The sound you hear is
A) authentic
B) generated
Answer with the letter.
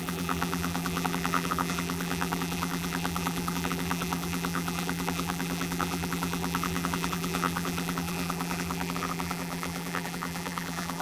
B